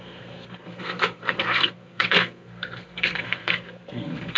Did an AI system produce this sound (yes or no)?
yes